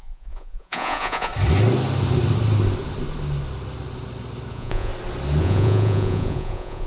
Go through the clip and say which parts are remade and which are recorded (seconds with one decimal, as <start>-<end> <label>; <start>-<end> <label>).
0.0-1.3 remade; 1.3-4.5 recorded; 4.5-4.9 remade; 4.9-5.4 recorded; 5.4-6.9 remade